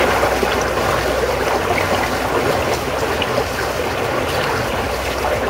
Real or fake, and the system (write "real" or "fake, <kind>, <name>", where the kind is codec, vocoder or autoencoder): real